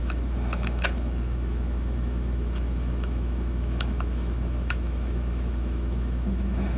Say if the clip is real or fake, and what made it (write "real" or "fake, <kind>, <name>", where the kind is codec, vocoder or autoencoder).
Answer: fake, autoencoder, DAC-VAE